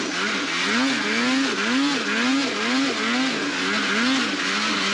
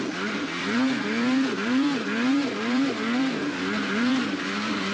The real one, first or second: first